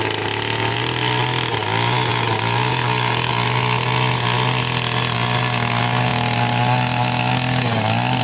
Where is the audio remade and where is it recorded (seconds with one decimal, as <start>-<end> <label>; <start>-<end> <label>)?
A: 0.0-8.2 recorded